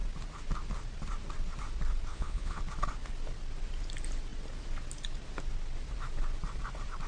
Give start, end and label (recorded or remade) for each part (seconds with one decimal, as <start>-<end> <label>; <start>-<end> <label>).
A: 0.0-2.1 recorded; 2.1-2.6 remade; 2.6-7.1 recorded